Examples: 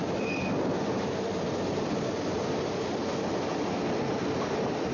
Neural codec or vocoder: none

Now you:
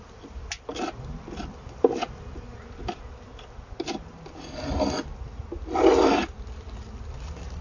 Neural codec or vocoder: none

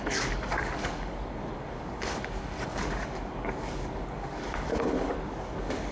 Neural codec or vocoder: codec, DAC